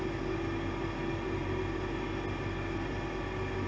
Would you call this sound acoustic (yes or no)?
yes